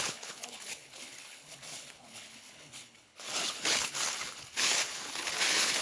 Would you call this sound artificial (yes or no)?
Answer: yes